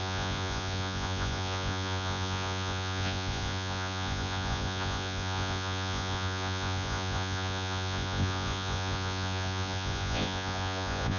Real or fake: fake